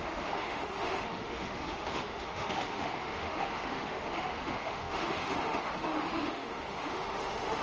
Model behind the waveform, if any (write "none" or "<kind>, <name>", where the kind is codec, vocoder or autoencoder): autoencoder, DAC-VAE